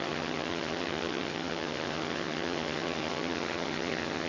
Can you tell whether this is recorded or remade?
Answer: remade